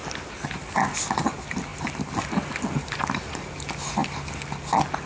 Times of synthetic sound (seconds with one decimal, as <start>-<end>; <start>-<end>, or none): none